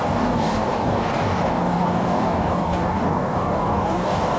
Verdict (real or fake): fake